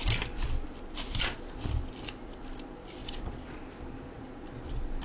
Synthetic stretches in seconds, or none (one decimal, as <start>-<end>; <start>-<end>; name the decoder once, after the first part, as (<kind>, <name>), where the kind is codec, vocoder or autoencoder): none